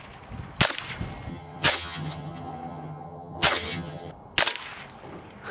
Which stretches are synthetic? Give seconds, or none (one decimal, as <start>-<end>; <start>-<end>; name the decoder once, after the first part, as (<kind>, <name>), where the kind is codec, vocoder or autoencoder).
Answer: 1.3-4.1 (vocoder, HiFi-GAN)